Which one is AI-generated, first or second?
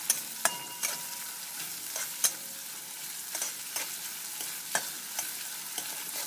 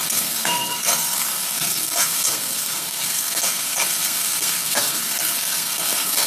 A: second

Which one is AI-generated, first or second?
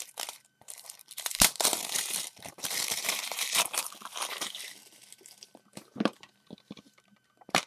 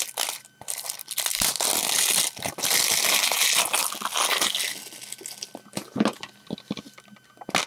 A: first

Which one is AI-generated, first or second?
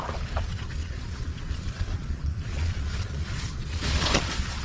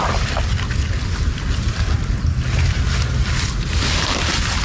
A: first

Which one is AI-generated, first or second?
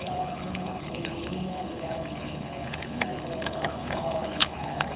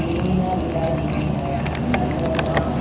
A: first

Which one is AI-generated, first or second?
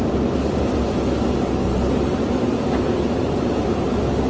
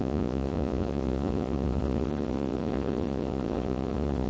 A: second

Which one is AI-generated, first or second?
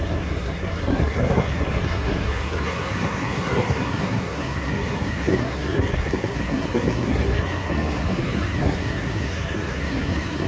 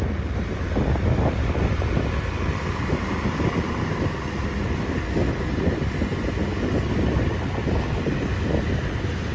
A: first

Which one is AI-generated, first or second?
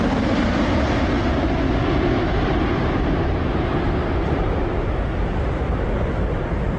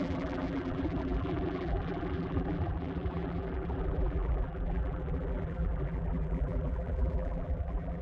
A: second